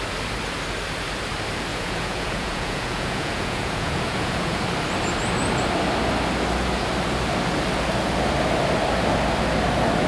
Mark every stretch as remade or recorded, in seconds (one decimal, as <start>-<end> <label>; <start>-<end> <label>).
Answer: 0.0-1.7 recorded; 1.7-4.6 remade; 4.6-10.1 recorded